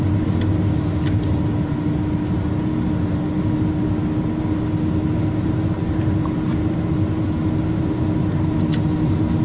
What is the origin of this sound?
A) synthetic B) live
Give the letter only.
B